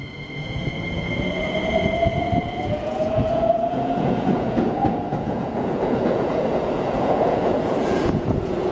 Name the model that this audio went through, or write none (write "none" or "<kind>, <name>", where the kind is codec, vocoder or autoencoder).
vocoder, Vocos